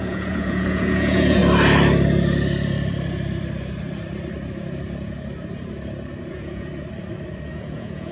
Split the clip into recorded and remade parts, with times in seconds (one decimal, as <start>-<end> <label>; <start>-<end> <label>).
0.0-1.4 remade; 1.4-6.3 recorded; 6.3-6.7 remade; 6.7-7.5 recorded; 7.5-8.1 remade